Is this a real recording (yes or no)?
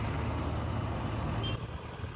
yes